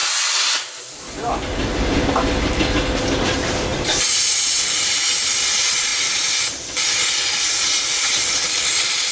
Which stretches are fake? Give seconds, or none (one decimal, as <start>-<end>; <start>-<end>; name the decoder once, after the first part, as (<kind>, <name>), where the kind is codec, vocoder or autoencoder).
none